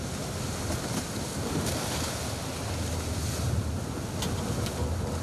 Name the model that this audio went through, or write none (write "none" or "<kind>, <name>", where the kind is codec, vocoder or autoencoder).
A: none